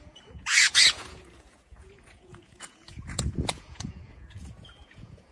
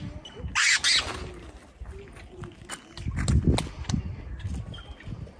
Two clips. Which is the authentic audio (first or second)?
second